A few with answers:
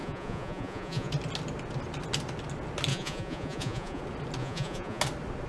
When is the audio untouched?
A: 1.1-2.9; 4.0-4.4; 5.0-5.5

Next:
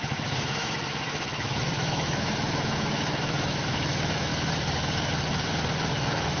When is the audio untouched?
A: 4.3-5.9

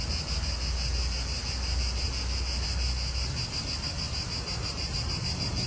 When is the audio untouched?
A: 0.0-5.7

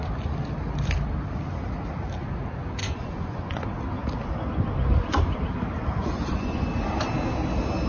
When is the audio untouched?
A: 0.0-2.8; 3.6-6.0; 6.7-7.9

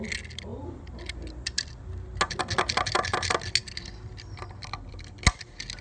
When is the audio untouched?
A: 0.0-5.8

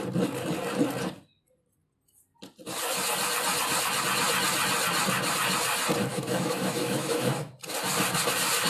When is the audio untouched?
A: 0.0-6.1; 7.5-8.7

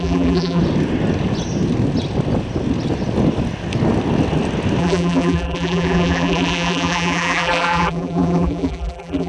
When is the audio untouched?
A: 0.6-4.8

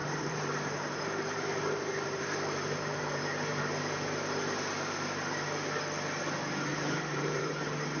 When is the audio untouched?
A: 4.4-6.7; 7.5-8.0